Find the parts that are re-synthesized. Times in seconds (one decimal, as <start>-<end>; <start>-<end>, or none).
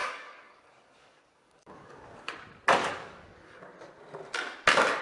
0.0-2.3; 2.8-3.6